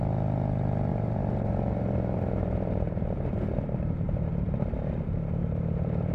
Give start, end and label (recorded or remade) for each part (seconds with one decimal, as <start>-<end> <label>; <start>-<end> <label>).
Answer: 0.0-0.9 recorded; 0.9-4.6 remade; 4.6-6.1 recorded